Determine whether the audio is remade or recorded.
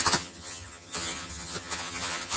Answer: remade